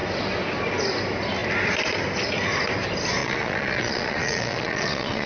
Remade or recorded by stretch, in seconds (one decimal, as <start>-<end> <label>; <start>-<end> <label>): 0.0-3.2 recorded; 3.2-5.3 remade